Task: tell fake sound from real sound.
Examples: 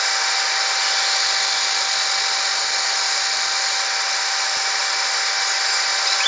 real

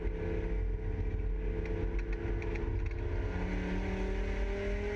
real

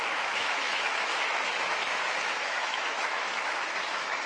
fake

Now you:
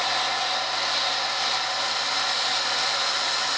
real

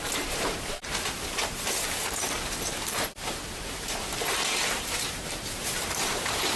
fake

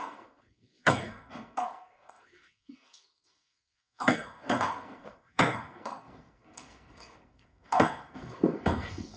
fake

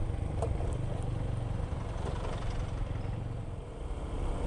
real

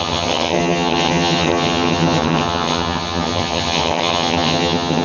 fake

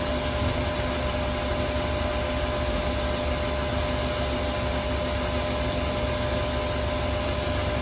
real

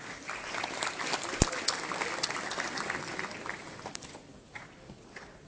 fake